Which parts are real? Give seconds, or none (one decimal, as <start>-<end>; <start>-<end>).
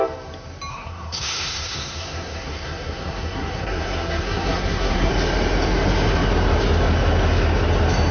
0.0-0.7; 5.1-8.1